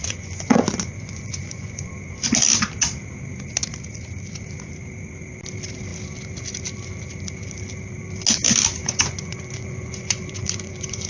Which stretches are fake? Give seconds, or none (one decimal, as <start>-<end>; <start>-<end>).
0.0-1.9; 8.8-11.1